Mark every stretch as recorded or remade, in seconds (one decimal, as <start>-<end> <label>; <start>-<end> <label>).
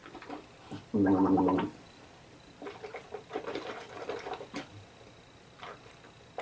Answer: 0.0-6.4 recorded